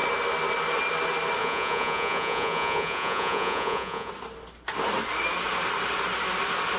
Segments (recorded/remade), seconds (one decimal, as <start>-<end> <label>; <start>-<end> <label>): 0.0-1.4 recorded; 1.4-4.1 remade; 4.1-6.8 recorded